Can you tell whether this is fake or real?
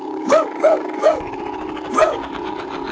fake